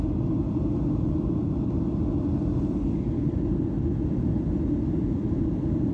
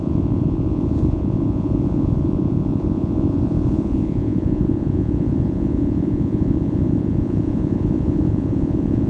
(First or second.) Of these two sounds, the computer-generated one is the second